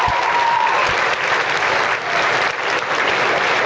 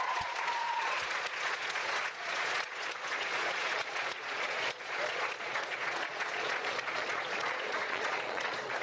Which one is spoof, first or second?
second